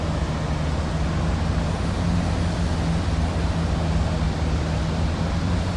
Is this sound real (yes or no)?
yes